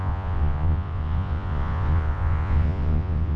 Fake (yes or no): yes